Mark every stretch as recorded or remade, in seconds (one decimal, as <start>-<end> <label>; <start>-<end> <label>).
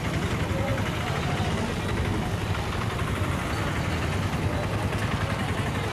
0.0-0.7 recorded; 0.7-1.5 remade; 1.5-2.1 recorded; 2.1-3.9 remade; 3.9-5.9 recorded